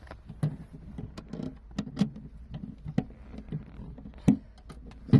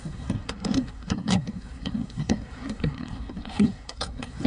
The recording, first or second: first